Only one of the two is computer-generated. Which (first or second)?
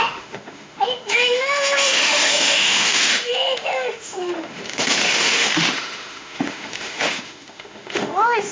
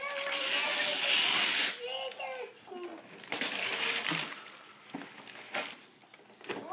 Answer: first